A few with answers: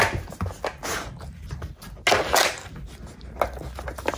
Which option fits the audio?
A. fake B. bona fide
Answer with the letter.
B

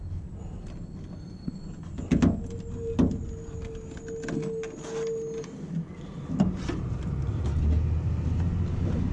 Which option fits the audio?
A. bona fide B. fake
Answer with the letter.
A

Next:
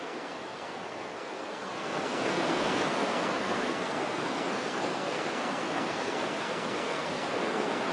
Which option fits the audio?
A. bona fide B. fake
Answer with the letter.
B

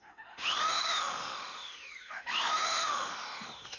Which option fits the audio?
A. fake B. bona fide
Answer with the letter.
A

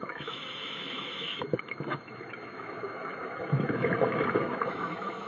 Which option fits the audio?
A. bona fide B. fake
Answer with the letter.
B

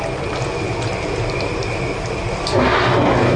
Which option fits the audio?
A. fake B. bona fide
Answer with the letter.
B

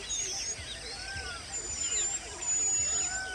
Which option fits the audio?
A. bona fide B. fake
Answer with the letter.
A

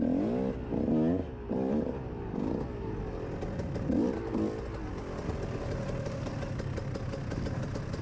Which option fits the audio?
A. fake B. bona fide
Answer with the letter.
B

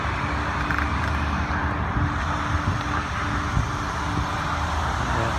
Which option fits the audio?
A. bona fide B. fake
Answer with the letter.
A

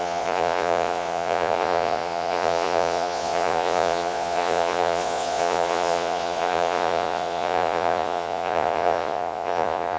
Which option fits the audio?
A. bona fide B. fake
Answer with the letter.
B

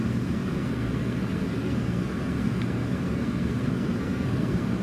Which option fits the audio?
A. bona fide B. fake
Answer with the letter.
B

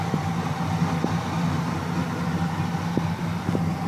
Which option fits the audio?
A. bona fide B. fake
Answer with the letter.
A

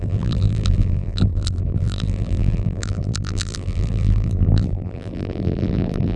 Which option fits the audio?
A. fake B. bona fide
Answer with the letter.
A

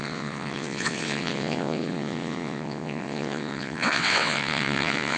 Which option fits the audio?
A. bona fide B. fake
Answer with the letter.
B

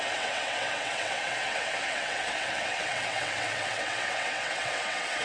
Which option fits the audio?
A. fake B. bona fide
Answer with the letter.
A